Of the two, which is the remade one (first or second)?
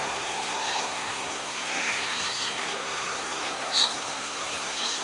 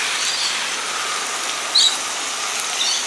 first